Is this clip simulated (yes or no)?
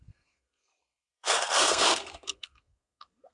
yes